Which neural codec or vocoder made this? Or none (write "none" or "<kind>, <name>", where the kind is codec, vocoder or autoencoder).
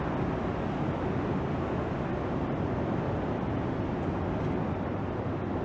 none